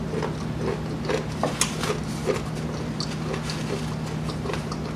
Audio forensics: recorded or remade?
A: recorded